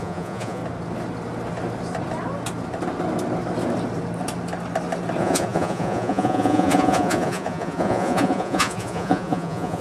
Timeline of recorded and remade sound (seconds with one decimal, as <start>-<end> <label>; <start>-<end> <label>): 0.0-0.6 remade; 0.6-5.2 recorded; 5.2-9.8 remade